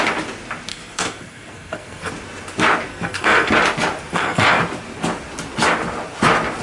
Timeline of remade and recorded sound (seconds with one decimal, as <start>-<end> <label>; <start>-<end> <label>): 0.0-0.7 recorded; 0.7-2.1 remade; 2.1-2.9 recorded; 2.9-3.5 remade; 3.5-4.1 recorded; 4.1-4.6 remade; 4.6-6.6 recorded